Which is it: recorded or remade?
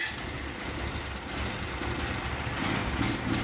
recorded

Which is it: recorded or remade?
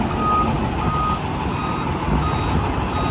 recorded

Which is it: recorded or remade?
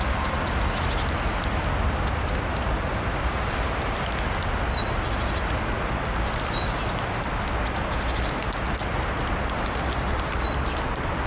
recorded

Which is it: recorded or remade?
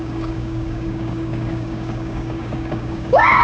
remade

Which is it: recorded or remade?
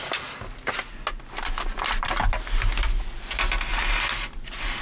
recorded